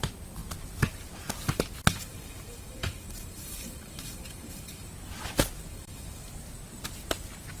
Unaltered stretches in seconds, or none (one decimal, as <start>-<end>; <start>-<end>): 0.0-1.9; 4.9-5.7; 6.3-7.6